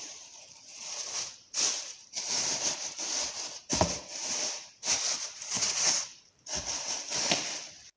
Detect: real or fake fake